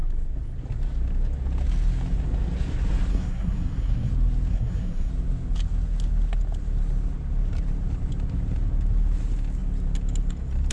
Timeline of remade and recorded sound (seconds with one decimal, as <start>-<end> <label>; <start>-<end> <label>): 0.0-3.1 recorded; 3.1-4.1 remade; 4.1-4.5 recorded; 4.5-5.1 remade; 5.1-10.7 recorded